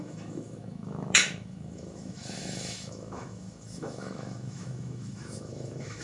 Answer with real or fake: fake